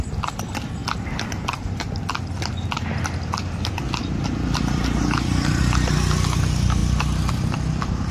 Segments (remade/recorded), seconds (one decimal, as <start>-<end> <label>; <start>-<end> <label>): 0.0-4.3 recorded; 4.3-5.6 remade; 5.6-6.8 recorded; 6.8-7.3 remade; 7.3-8.1 recorded